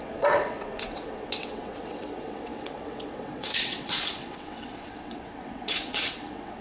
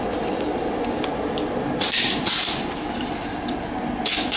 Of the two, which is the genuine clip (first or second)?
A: second